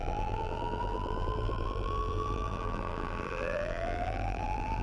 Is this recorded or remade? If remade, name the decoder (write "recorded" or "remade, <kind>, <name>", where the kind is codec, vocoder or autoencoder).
remade, vocoder, BigVGAN v2